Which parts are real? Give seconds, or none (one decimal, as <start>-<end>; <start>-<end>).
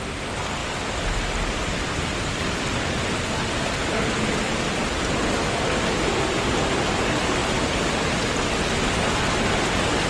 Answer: 0.0-7.4; 8.2-10.1